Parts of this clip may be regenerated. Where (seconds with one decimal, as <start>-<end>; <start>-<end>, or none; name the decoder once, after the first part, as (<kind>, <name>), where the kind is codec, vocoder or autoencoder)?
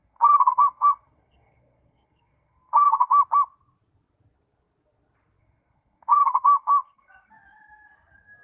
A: 0.0-3.2 (codec, SNAC); 5.4-7.3